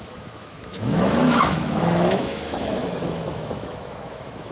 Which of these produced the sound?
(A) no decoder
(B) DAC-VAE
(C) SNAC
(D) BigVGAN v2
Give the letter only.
B